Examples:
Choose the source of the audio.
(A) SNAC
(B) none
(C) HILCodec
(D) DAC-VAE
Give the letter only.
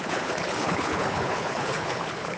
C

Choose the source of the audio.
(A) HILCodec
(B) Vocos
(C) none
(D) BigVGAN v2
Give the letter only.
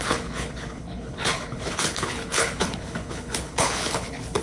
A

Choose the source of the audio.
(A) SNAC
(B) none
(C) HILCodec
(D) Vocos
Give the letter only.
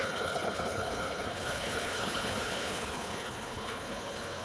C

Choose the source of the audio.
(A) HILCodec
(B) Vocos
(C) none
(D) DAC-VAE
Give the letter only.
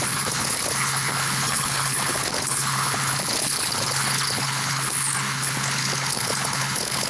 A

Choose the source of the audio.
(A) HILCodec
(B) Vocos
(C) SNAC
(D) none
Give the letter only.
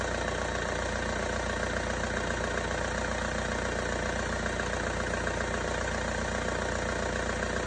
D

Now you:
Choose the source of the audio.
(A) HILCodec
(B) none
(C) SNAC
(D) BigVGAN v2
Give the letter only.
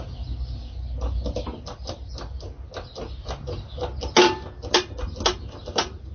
B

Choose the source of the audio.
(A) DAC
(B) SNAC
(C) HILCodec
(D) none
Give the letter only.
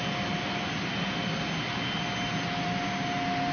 D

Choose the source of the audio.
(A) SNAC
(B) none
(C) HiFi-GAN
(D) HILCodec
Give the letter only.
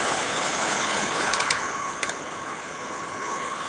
D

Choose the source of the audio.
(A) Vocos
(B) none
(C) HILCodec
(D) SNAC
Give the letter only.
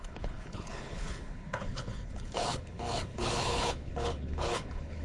C